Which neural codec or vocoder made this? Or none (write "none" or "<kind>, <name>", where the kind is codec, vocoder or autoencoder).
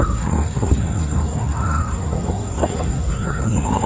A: codec, SNAC